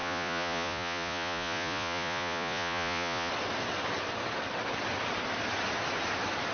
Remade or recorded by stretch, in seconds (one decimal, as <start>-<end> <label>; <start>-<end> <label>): 0.0-3.3 remade; 3.3-6.5 recorded